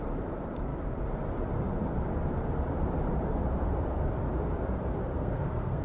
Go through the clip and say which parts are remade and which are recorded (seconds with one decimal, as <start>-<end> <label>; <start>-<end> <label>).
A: 0.0-5.1 recorded; 5.1-5.8 remade

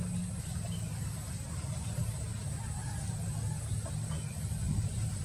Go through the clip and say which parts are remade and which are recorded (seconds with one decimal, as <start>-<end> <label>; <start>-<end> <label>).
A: 0.0-5.2 recorded